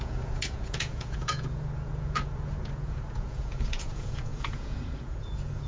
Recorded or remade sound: remade